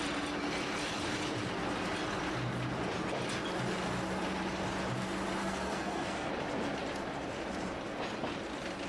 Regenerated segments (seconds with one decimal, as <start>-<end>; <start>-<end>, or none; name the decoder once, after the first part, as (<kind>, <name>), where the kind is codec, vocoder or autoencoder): 5.4-6.3 (codec, SNAC)